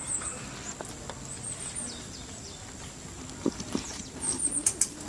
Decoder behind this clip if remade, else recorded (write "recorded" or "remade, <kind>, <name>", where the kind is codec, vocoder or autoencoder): recorded